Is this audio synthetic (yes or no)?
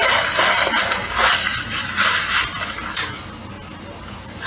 no